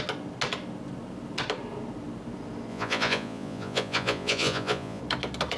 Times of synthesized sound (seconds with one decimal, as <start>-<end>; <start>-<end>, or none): 2.7-5.0